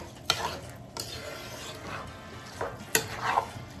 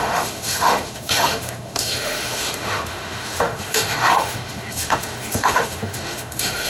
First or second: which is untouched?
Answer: first